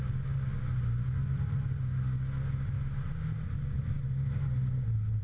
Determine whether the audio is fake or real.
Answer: real